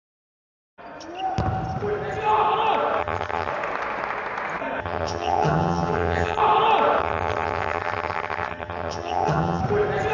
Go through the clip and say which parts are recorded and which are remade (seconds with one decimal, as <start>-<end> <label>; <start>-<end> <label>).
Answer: 0.0-3.0 recorded; 3.0-3.5 remade; 3.5-4.8 recorded; 4.8-6.4 remade; 6.4-7.0 recorded; 7.0-9.6 remade; 9.6-10.1 recorded